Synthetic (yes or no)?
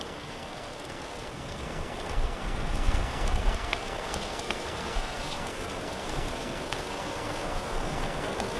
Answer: yes